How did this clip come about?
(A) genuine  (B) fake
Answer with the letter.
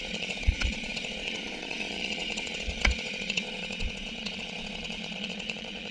B